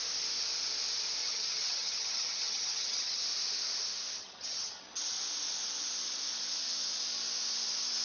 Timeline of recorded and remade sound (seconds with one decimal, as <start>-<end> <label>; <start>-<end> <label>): 0.0-1.2 recorded; 1.2-3.2 remade; 3.2-4.2 recorded; 4.2-5.0 remade; 5.0-8.0 recorded